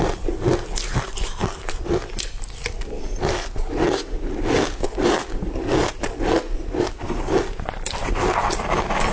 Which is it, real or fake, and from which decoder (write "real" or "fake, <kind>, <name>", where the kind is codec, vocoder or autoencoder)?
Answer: real